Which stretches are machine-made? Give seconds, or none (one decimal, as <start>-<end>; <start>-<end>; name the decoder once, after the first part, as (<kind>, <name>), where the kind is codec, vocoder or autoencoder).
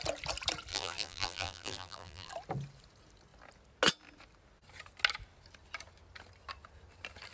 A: 0.7-2.3 (vocoder, BigVGAN v2)